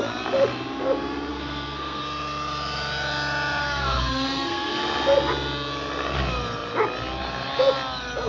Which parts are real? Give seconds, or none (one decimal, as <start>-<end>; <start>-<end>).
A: 0.0-1.3; 2.0-3.6; 4.7-8.3